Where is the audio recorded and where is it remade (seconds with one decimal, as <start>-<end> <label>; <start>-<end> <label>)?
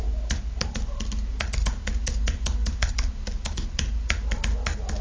0.0-5.0 recorded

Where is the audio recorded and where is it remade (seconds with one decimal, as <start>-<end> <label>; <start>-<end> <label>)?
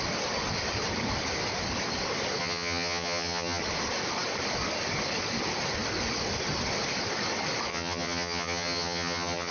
0.0-2.4 recorded; 2.4-3.6 remade; 3.6-7.7 recorded; 7.7-9.5 remade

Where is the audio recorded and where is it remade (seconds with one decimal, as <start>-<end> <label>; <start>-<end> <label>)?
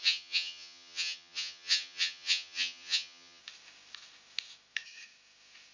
0.0-3.4 remade; 3.4-5.7 recorded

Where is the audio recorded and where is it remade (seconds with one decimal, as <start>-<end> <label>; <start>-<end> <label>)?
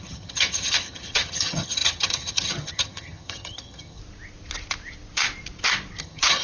0.0-4.0 remade; 4.0-6.0 recorded; 6.0-6.4 remade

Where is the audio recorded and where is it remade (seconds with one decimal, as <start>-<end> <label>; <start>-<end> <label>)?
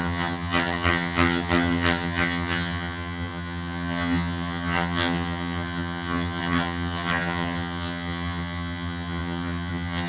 0.0-10.1 remade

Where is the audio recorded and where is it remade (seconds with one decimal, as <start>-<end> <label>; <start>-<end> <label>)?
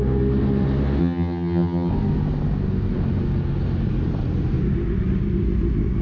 0.0-1.0 recorded; 1.0-1.9 remade; 1.9-6.0 recorded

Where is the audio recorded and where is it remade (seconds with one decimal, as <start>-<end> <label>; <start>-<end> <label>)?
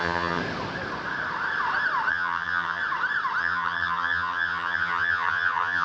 0.0-0.4 remade; 0.4-2.1 recorded; 2.1-2.8 remade; 2.8-3.4 recorded; 3.4-5.8 remade